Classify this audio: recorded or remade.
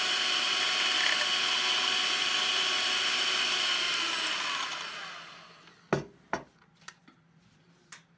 recorded